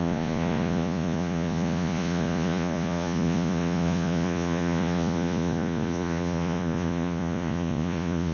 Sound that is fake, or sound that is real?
fake